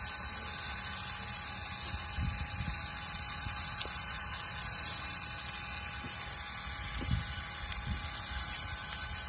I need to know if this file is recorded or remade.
recorded